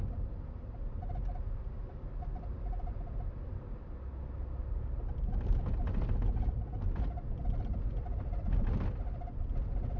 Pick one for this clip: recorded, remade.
recorded